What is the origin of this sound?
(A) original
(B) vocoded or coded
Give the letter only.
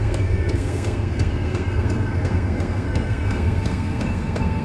B